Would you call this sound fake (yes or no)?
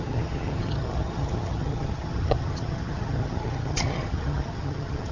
yes